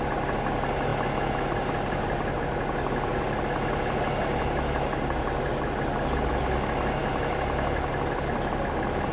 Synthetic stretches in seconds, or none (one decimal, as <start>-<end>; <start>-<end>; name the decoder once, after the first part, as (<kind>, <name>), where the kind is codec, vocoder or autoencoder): none